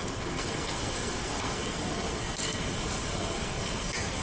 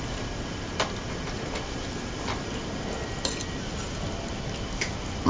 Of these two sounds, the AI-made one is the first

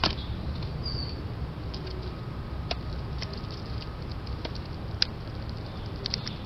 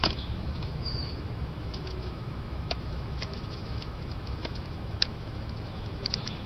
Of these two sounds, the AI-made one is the second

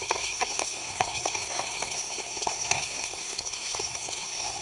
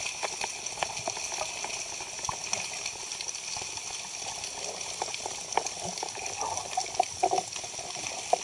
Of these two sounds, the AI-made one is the first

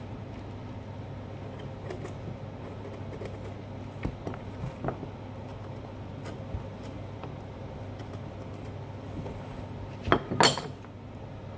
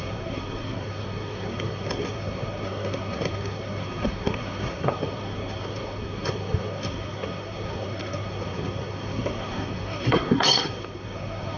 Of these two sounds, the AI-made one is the second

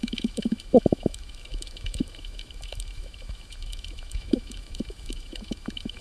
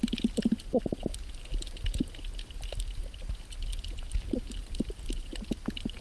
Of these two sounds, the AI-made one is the first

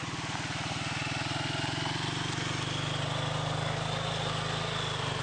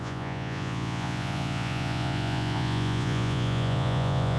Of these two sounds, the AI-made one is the second